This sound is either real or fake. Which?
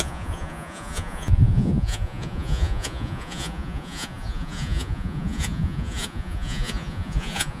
fake